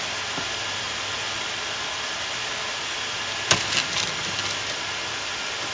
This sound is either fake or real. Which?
real